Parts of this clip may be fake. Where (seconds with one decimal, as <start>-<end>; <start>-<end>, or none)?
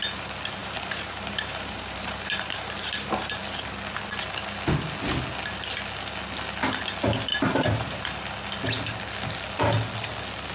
0.6-3.4; 7.3-8.0